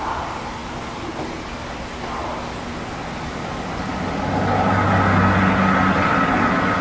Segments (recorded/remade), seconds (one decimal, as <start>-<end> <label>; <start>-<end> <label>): 0.0-6.8 recorded